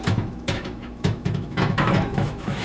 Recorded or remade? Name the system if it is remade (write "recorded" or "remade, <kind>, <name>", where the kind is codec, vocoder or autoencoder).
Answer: remade, autoencoder, DAC-VAE